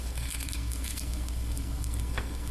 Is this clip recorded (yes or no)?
no